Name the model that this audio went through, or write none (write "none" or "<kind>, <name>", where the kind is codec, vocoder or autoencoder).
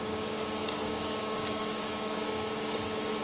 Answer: codec, DAC